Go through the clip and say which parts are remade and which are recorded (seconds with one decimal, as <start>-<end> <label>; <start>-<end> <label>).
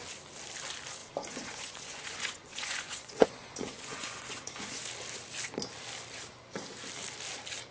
0.0-1.0 recorded; 1.0-4.8 remade; 4.8-7.7 recorded